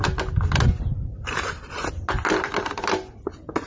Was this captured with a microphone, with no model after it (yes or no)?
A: yes